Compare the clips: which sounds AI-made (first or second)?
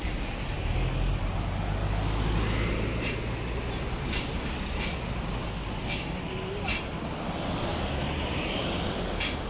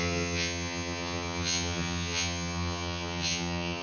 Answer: second